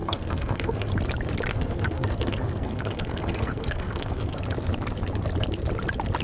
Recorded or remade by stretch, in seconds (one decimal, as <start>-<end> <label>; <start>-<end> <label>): 0.0-0.9 remade; 0.9-1.5 recorded; 1.5-4.4 remade; 4.4-6.2 recorded